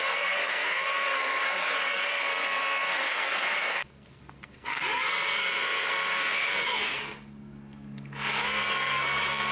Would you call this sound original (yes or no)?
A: no